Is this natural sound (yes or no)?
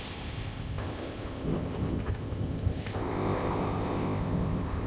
no